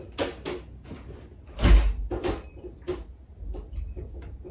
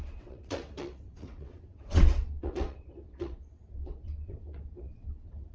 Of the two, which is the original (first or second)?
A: first